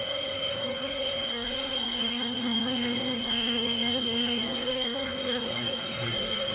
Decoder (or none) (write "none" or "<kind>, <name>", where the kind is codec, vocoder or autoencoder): codec, SNAC